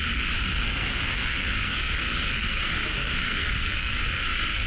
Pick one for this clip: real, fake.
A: fake